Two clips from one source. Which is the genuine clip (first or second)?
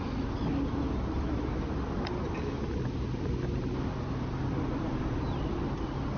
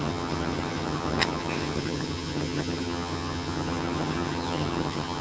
first